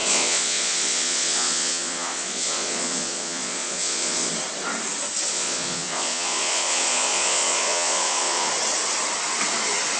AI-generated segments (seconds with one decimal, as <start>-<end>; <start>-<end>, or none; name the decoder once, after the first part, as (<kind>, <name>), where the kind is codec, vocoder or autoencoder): 0.0-4.3 (vocoder, Vocos); 5.3-8.5